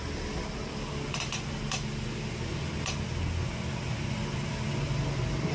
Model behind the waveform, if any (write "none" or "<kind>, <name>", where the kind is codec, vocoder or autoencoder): none